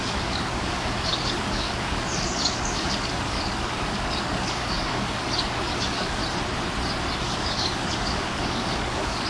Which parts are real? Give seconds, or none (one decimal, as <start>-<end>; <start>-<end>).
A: 6.2-7.2